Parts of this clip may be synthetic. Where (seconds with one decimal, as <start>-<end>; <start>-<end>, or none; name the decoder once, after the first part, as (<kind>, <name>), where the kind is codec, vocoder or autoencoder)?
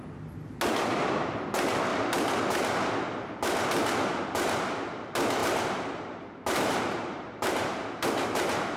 5.4-8.8 (vocoder, BigVGAN v2)